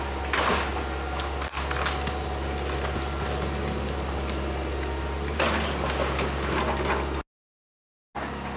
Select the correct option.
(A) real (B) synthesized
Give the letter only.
A